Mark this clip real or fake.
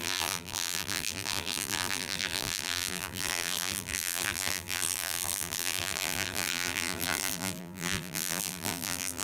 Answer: fake